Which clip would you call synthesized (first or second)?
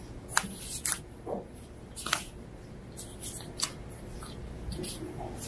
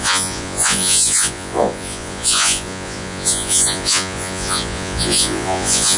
second